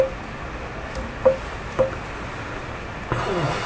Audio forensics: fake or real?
real